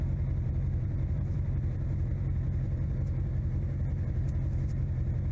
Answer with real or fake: fake